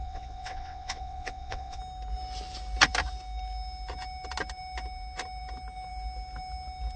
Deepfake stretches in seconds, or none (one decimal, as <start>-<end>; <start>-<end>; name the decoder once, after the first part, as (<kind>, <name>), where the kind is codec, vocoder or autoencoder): 0.0-1.8 (vocoder, WaveNeXt)

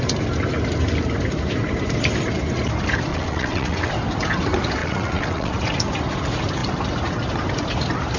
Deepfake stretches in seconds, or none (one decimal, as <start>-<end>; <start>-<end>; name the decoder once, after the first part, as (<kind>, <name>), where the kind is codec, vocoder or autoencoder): 3.1-3.9 (vocoder, WaveNeXt); 4.8-5.5

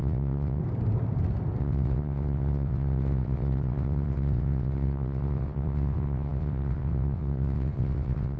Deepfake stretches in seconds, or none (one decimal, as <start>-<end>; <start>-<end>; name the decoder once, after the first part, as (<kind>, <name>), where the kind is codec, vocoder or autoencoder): 0.0-0.6 (vocoder, WaveNeXt); 1.6-8.4

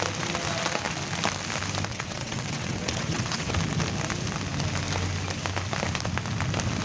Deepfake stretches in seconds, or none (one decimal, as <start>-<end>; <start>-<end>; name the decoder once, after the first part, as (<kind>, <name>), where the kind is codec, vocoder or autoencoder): 1.9-3.5 (vocoder, WaveNeXt)

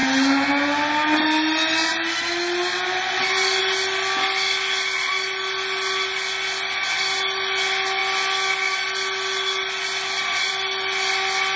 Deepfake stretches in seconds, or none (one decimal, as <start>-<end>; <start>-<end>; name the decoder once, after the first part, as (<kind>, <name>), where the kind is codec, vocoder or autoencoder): none

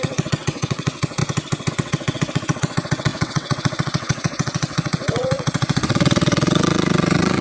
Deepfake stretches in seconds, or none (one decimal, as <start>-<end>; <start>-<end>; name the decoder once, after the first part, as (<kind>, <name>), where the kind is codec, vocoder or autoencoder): 0.0-1.2 (vocoder, WaveNeXt); 1.7-7.4

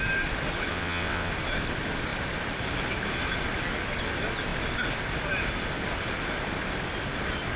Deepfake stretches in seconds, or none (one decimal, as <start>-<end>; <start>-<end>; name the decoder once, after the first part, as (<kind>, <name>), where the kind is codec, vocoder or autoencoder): 0.7-1.3 (vocoder, WaveNeXt)

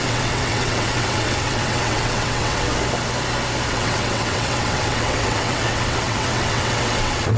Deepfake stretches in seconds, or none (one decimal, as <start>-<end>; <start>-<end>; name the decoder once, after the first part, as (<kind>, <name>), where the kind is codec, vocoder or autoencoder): 0.0-2.7 (vocoder, WaveNeXt); 3.7-7.4